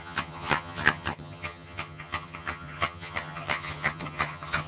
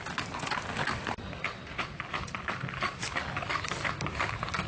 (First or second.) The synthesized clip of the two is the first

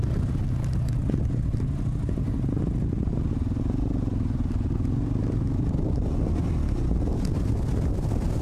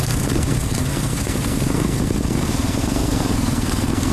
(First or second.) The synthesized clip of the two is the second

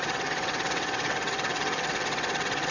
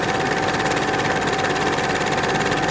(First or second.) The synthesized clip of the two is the first